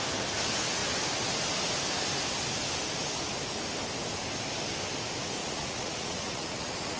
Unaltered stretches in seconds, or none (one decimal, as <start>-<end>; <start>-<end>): 0.0-5.4